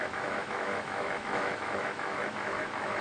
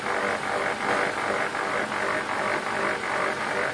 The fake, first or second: first